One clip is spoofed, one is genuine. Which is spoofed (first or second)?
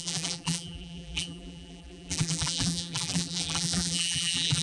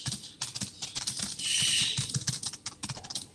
first